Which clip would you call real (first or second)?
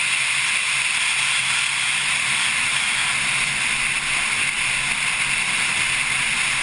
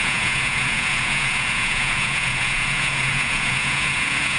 first